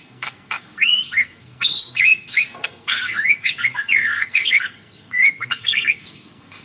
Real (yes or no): no